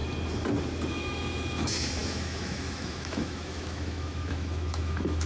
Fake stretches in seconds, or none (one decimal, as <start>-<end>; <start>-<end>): 0.9-5.3